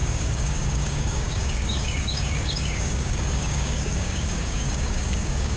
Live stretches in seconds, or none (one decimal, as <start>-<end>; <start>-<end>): none